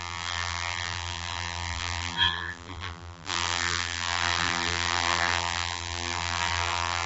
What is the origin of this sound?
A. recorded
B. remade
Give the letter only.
B